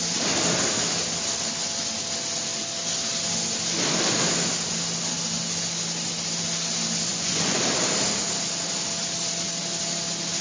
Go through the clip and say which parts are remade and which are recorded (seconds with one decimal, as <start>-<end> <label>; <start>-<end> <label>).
0.0-7.1 recorded; 7.1-7.6 remade; 7.6-10.4 recorded